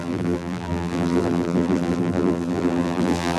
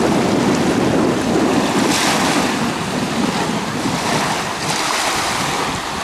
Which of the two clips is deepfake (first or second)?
first